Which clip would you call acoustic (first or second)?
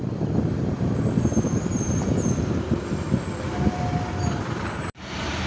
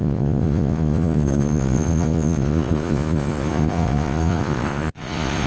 first